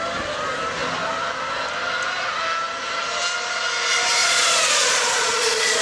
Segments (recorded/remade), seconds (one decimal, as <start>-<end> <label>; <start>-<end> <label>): 0.0-4.2 recorded; 4.2-5.8 remade